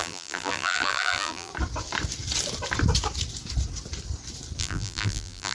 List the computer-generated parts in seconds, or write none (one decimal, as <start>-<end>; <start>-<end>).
0.0-1.5; 4.6-5.5